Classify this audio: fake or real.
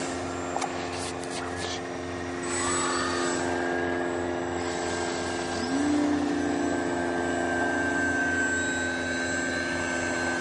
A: real